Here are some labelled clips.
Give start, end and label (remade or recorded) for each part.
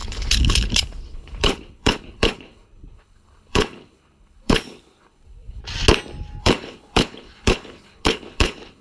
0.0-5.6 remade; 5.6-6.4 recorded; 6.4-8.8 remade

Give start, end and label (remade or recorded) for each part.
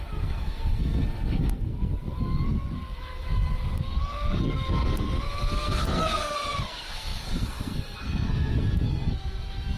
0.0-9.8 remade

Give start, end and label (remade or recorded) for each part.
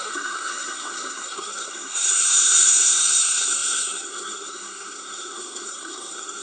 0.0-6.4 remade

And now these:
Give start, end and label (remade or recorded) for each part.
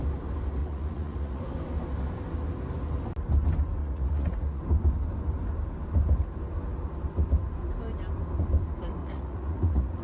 0.0-0.6 recorded; 0.6-1.4 remade; 1.4-3.8 recorded; 3.8-4.6 remade; 4.6-9.0 recorded; 9.0-10.0 remade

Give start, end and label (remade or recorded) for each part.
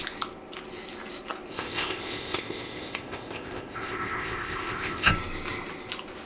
0.0-1.5 recorded; 1.5-5.1 remade; 5.1-6.3 recorded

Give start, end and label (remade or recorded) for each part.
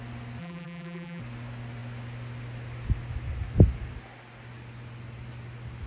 0.0-0.4 recorded; 0.4-1.2 remade; 1.2-5.9 recorded